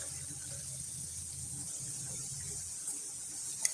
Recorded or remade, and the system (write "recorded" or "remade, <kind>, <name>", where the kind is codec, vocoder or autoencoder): recorded